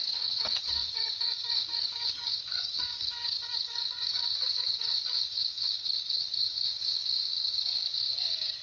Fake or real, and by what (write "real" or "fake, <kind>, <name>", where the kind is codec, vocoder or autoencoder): fake, codec, DAC